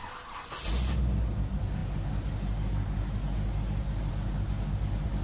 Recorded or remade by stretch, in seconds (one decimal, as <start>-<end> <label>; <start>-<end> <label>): 0.0-5.2 recorded